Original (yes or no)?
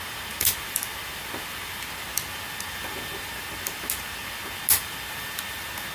yes